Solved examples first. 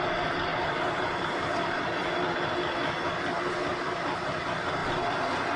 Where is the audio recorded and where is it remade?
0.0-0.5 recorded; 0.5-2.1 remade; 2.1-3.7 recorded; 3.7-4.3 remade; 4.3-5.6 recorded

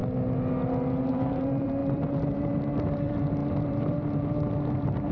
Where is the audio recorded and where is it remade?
0.0-1.1 recorded; 1.1-5.1 remade

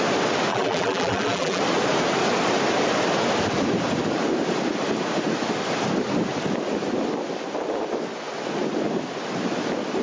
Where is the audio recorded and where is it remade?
0.0-0.5 recorded; 0.5-1.6 remade; 1.6-10.0 recorded

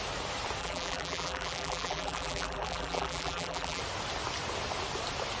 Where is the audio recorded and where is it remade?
0.0-0.6 recorded; 0.6-3.8 remade; 3.8-5.4 recorded

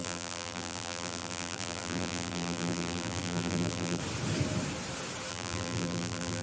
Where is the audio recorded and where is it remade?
0.0-4.0 remade; 4.0-5.3 recorded; 5.3-6.4 remade

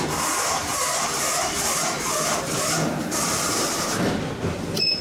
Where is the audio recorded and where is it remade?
0.0-5.0 remade